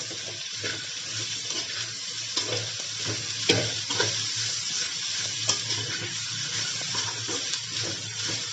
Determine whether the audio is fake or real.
real